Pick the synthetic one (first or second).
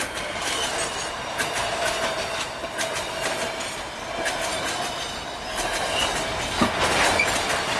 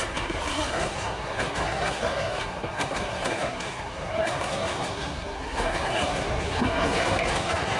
second